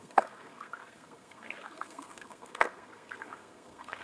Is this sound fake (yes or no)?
yes